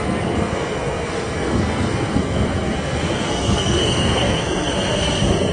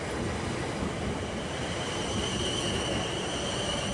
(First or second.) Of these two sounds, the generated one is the first